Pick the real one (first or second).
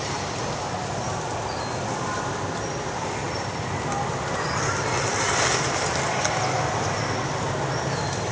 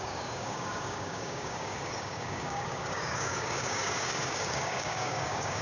first